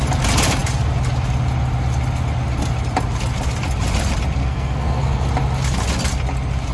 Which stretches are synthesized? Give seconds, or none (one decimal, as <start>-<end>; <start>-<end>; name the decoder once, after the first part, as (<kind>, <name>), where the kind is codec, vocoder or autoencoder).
4.4-5.3 (codec, SNAC)